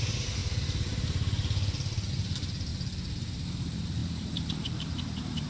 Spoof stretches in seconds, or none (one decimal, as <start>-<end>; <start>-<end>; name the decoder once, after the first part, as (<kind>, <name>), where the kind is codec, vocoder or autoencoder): 0.0-0.4 (vocoder, BigVGAN v2); 2.1-2.7; 3.5-5.5